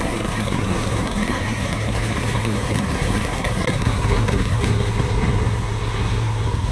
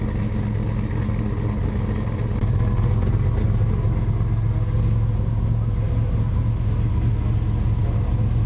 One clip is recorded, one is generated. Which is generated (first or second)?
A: first